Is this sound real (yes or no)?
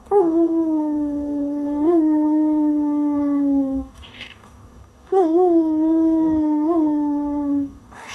no